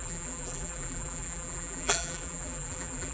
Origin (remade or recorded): remade